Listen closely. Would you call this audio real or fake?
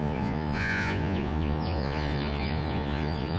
fake